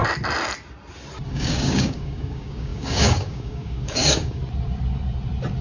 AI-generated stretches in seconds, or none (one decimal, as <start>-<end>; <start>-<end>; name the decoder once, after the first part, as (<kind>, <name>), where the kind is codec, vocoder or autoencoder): 1.3-4.4 (codec, DAC)

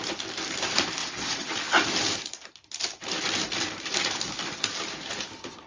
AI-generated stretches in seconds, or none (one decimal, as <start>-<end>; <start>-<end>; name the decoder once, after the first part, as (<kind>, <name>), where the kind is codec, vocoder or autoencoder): 1.0-1.5 (vocoder, WaveNeXt)